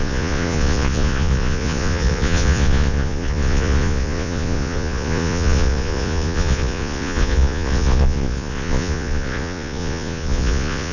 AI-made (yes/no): yes